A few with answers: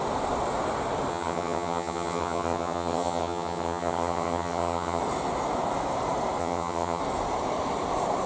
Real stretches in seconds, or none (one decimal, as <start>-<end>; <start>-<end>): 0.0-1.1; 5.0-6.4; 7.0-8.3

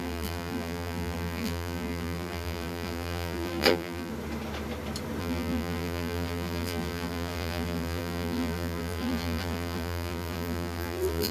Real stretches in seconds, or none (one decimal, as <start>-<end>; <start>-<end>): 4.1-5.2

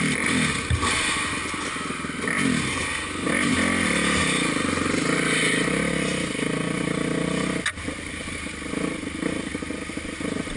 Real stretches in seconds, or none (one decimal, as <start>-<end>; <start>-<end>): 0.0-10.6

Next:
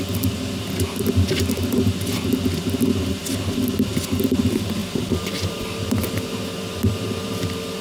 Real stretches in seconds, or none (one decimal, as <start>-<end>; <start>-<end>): 0.0-4.8; 5.7-7.8

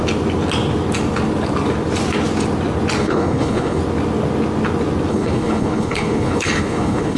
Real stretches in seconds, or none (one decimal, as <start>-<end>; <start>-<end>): 0.0-3.0; 3.8-5.1

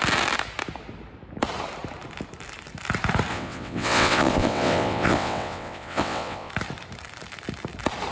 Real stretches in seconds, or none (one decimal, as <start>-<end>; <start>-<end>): 0.0-3.3; 6.5-8.1

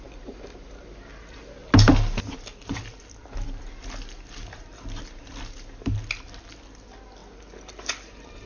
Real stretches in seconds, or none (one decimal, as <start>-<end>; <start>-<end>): 0.0-1.1; 5.9-8.5

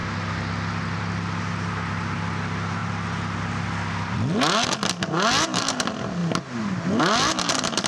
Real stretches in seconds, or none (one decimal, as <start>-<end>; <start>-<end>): 0.0-7.9